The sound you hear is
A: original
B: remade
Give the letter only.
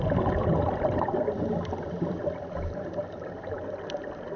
B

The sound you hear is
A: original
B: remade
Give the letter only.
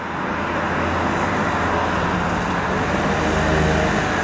A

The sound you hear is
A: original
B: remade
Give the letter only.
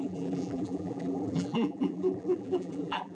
B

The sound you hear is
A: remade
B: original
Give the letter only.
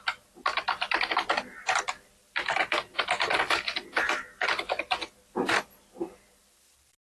A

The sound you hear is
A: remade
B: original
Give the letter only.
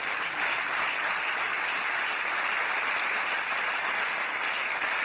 A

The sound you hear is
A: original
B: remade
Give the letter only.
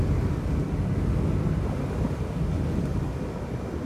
A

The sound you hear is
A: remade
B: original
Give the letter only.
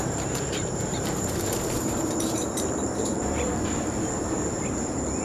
A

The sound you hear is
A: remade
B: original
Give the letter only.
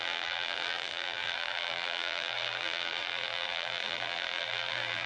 A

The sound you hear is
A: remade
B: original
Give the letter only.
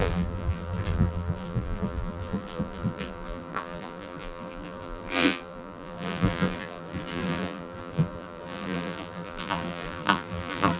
A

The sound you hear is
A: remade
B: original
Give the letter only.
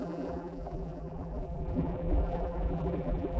A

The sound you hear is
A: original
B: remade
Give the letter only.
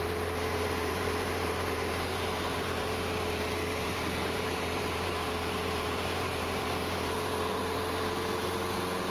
B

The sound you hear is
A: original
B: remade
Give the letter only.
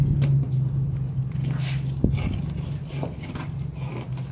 A